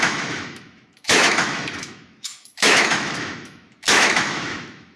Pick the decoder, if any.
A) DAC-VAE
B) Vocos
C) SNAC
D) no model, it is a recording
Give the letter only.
A